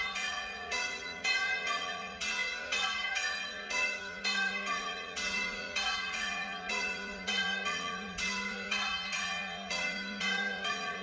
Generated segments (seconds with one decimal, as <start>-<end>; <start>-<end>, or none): 0.0-11.0